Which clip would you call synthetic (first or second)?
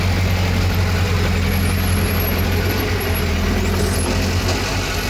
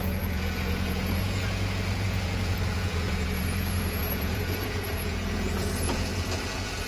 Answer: second